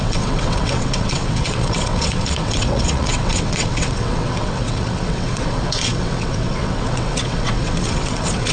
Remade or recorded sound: remade